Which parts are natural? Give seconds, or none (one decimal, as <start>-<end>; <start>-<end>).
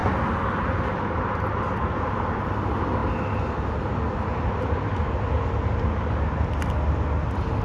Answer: 0.0-7.6